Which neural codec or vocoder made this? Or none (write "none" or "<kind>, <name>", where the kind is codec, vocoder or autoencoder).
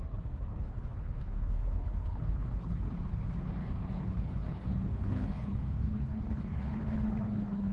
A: codec, HILCodec